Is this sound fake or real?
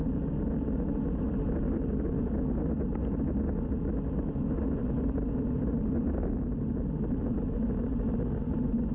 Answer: real